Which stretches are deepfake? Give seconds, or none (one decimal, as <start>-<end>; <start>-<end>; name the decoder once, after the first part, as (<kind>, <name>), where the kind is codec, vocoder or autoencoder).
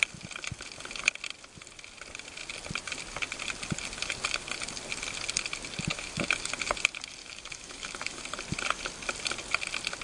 5.9-6.5 (autoencoder, DAC-VAE); 7.2-8.2